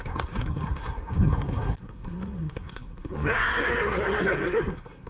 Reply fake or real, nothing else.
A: fake